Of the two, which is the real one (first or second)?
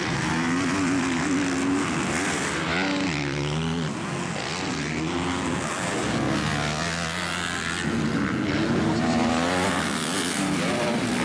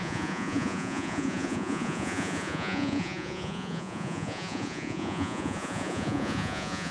first